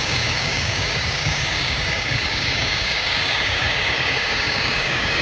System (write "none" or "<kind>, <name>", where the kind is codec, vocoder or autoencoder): codec, DAC